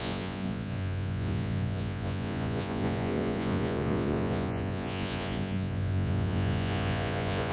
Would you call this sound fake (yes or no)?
yes